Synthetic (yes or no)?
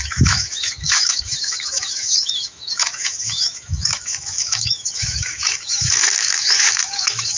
yes